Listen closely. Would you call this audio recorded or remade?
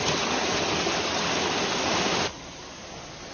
recorded